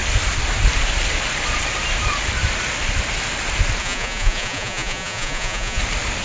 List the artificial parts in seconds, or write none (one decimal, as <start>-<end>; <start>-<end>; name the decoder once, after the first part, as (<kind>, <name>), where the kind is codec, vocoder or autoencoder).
3.8-5.8 (vocoder, Vocos)

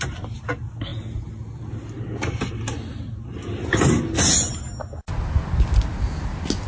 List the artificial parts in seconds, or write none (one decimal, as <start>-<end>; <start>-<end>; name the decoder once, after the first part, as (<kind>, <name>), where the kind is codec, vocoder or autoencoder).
none